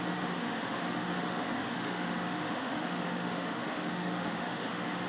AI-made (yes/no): yes